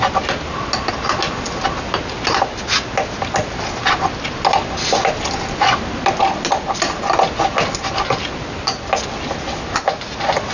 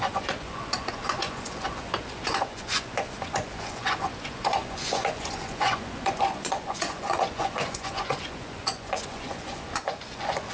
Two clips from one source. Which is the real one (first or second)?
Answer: first